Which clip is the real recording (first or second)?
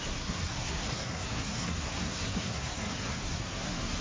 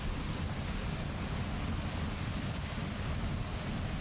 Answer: second